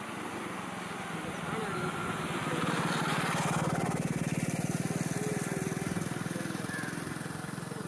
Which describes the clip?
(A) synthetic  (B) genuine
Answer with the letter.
B